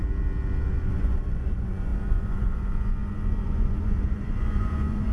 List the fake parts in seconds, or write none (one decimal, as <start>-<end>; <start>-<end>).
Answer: 0.7-5.1